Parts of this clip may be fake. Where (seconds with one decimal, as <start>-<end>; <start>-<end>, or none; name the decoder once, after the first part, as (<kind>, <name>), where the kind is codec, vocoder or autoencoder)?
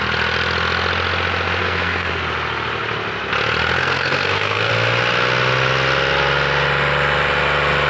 1.6-2.1 (codec, SNAC); 3.8-4.7